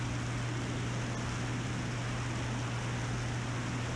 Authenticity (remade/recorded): recorded